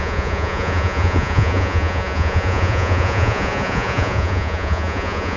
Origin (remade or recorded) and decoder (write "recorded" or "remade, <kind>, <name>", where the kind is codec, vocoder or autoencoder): remade, vocoder, Vocos